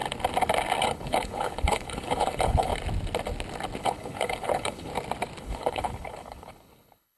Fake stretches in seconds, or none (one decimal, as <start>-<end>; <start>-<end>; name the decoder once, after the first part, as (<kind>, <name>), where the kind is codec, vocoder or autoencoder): 0.8-2.7 (codec, HILCodec); 3.8-4.9; 5.4-7.2

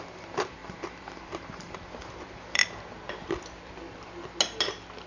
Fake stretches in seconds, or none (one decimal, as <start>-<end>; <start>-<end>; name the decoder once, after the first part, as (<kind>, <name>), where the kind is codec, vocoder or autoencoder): 0.0-2.6 (vocoder, BigVGAN v2)

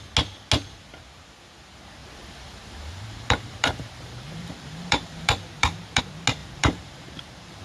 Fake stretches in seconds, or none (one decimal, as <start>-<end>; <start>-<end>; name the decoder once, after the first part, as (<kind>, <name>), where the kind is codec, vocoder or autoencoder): 2.0-6.0 (vocoder, BigVGAN v2); 6.4-7.6

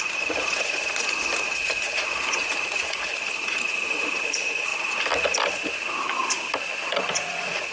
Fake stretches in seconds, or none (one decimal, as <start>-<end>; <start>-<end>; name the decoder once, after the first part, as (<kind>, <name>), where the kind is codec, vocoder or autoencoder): 0.0-4.7 (vocoder, Vocos); 7.1-7.7

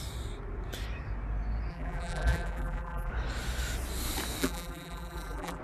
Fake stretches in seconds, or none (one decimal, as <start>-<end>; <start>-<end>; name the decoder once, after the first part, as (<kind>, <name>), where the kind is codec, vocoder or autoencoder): 1.7-3.1 (vocoder, BigVGAN v2); 4.4-5.6

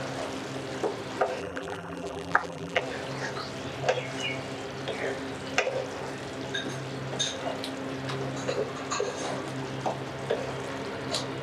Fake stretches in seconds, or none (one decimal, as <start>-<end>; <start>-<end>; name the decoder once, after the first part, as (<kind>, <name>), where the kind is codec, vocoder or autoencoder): 1.4-2.8 (vocoder, BigVGAN v2)